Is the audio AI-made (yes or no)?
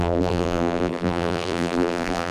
yes